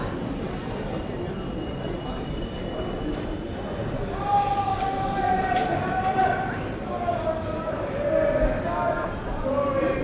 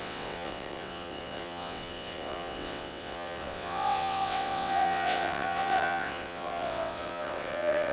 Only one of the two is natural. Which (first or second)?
first